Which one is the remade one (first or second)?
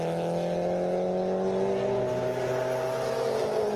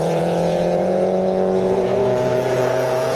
second